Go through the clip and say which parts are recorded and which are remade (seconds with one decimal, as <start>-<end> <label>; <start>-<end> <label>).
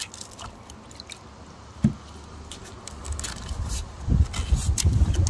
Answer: 0.0-5.3 recorded